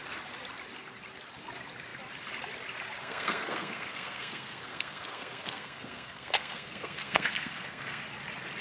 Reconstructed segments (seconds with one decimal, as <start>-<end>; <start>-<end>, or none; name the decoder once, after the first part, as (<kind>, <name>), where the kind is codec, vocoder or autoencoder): 3.0-8.0 (codec, SNAC)